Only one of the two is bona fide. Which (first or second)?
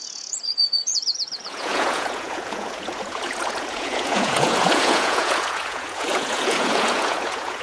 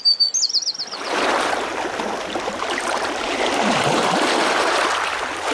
second